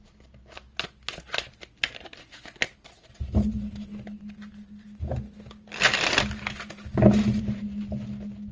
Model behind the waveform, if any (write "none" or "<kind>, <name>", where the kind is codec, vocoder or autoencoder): none